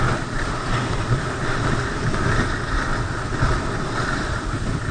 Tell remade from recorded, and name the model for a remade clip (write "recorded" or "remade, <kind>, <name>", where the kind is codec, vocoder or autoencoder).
recorded